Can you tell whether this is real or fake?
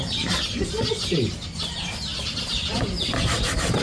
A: real